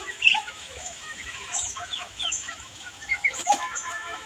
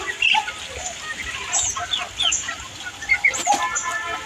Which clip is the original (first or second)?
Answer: second